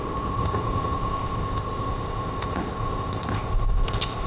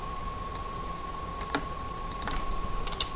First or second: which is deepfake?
first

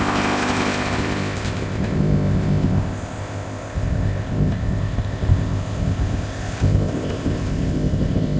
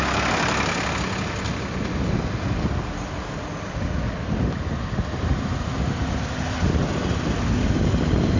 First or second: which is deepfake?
first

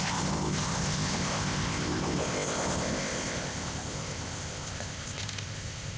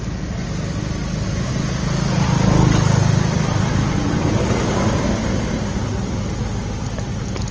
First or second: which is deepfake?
first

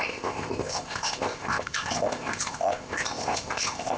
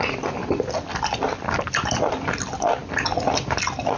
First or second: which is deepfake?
first